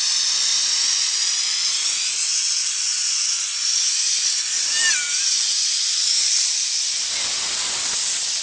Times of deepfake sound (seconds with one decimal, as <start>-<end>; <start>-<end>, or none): 0.5-2.1; 2.9-4.7